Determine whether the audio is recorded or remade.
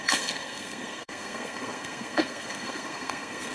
remade